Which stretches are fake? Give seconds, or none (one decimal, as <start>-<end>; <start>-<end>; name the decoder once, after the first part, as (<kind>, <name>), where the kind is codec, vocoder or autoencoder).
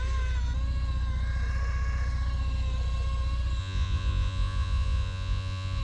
3.6-5.8 (vocoder, Vocos)